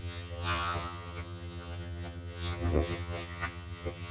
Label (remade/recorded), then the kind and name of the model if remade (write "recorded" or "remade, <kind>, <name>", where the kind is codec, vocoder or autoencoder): remade, vocoder, HiFi-GAN